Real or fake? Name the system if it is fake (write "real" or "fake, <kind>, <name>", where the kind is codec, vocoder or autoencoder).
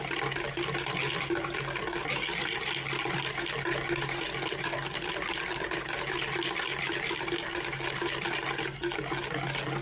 real